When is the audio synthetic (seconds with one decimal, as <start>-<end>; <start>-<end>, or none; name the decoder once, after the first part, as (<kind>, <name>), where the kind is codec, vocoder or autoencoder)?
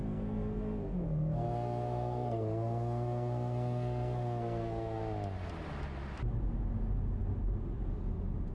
0.0-5.0 (codec, SNAC)